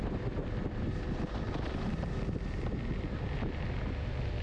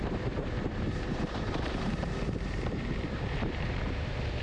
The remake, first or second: second